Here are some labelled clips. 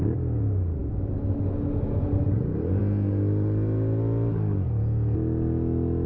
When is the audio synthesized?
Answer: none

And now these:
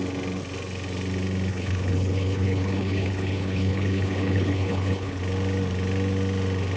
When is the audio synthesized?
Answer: 1.5-5.2

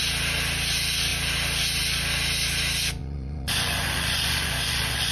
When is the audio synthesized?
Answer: 3.0-5.1

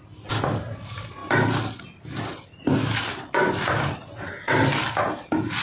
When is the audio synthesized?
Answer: none

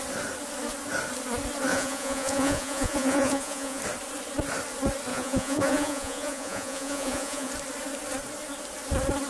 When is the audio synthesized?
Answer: 1.7-3.8; 5.1-7.5

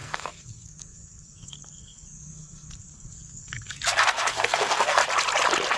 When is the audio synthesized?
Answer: 0.0-5.0